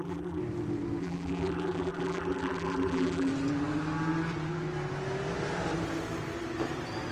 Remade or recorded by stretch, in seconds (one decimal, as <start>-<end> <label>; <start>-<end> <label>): 0.0-0.4 remade; 0.4-1.0 recorded; 1.0-3.3 remade; 3.3-7.1 recorded